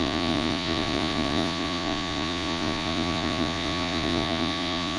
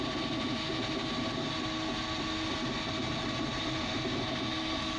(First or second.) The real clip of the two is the second